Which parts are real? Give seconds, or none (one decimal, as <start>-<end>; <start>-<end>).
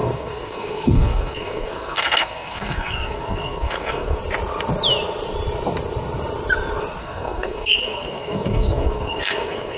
4.2-7.0